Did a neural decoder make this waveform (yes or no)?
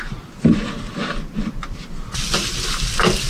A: no